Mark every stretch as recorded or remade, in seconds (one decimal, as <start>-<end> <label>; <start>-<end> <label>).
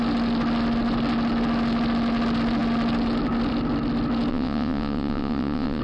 0.0-4.3 recorded; 4.3-5.8 remade